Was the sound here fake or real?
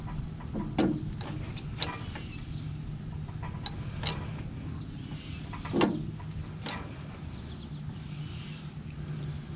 real